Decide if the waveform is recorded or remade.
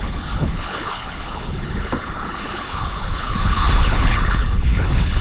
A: remade